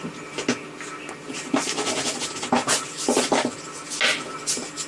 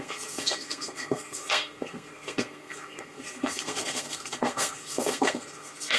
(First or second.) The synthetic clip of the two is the second